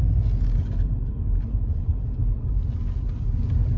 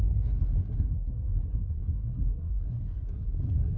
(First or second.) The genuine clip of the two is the first